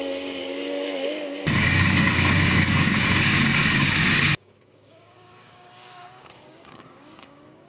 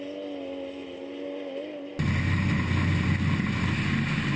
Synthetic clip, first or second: first